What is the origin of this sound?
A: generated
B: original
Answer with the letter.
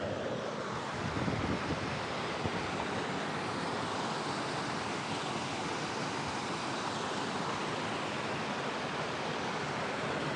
B